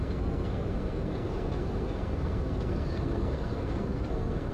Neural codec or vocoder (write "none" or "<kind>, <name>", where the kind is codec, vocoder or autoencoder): codec, SNAC